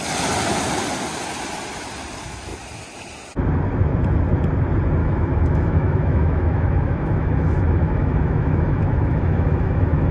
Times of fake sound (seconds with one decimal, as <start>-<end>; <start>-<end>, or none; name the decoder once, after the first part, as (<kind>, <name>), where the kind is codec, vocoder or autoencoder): 5.0-10.1 (autoencoder, DAC-VAE)